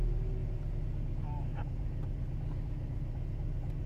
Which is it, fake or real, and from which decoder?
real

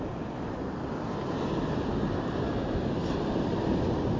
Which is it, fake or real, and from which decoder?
real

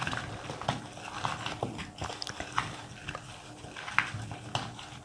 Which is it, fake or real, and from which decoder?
real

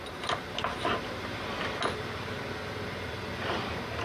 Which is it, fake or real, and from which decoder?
real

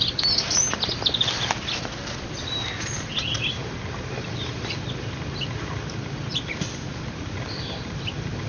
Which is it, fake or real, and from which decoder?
real